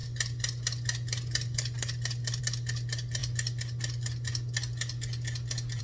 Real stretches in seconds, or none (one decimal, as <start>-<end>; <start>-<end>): 0.0-5.8